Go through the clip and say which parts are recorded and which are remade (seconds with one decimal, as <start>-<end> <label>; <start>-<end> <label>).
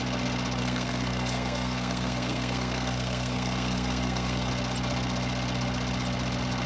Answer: 0.0-0.6 recorded; 0.6-4.5 remade; 4.5-6.7 recorded